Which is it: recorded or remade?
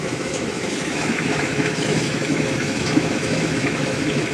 remade